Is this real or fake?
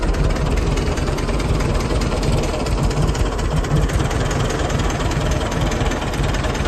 fake